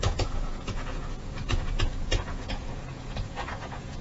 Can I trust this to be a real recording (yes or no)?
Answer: no